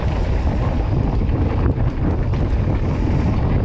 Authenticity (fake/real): real